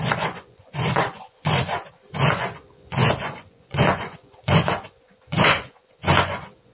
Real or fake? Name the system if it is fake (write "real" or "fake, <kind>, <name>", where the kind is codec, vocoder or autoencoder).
fake, vocoder, Vocos